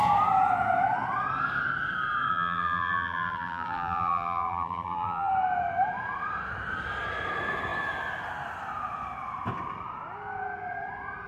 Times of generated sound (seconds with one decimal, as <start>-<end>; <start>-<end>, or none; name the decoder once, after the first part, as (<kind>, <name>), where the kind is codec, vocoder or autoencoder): 2.3-5.3 (vocoder, BigVGAN v2)

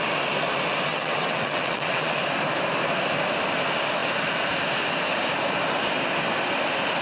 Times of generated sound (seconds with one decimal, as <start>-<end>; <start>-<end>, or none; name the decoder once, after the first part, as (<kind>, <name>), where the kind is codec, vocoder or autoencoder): 0.9-2.2 (vocoder, WaveNeXt)

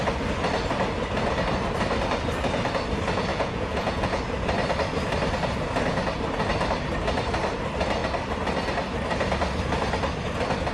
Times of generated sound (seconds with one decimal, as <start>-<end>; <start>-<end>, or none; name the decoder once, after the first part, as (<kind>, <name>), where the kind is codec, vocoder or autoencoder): 3.3-4.2 (vocoder, Vocos)

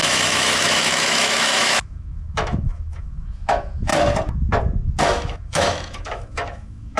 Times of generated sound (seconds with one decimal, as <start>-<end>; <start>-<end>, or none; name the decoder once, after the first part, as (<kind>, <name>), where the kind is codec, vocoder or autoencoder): 0.0-3.9 (autoencoder, DAC-VAE); 5.0-7.0